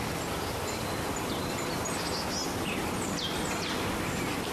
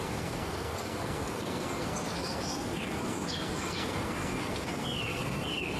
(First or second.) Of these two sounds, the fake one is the second